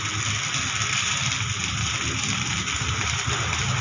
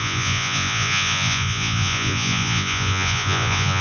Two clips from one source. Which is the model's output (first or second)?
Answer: second